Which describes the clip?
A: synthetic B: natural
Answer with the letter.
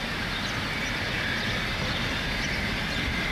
B